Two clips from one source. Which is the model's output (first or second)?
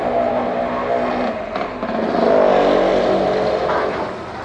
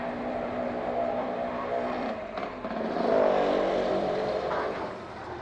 second